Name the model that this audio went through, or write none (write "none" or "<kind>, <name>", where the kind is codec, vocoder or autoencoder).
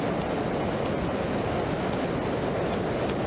none